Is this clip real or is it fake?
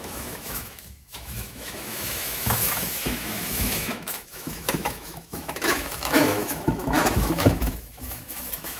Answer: fake